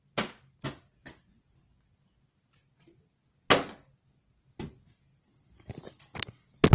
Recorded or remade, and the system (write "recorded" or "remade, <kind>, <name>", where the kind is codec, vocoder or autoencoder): recorded